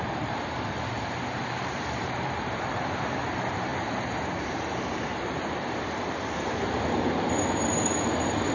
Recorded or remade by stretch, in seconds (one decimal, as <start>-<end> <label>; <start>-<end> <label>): 0.0-8.5 remade